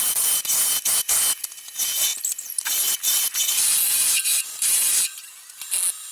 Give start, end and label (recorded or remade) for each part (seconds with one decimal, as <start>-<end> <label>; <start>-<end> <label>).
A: 0.0-6.1 recorded